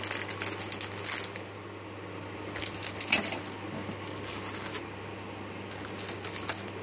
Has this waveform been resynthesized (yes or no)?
no